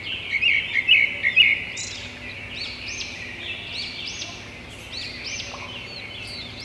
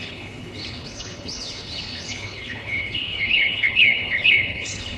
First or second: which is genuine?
first